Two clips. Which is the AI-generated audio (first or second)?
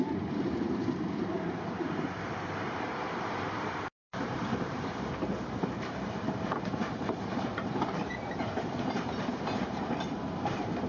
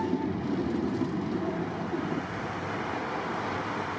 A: first